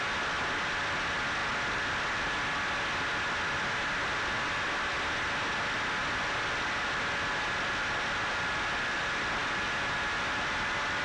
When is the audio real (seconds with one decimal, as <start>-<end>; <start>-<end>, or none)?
0.0-11.0